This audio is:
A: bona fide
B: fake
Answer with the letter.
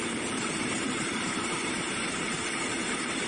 B